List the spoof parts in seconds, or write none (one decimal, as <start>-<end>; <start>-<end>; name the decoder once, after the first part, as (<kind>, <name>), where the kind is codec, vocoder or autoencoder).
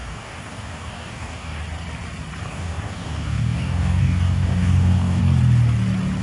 0.0-1.6 (codec, DAC); 2.5-5.2